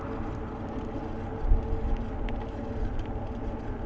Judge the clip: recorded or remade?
recorded